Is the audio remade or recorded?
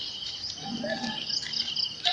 recorded